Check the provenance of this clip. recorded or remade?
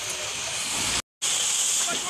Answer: recorded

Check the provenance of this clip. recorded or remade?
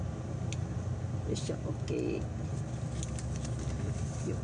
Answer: recorded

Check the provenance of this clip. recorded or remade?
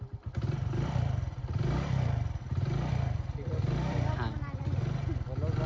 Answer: remade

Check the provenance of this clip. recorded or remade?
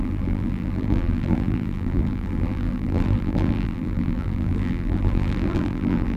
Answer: remade